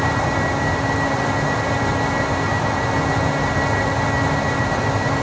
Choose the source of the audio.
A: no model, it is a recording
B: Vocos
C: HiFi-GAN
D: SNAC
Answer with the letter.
A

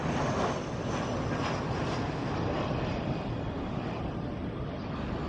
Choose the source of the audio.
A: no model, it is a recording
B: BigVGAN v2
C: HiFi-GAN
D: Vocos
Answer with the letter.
A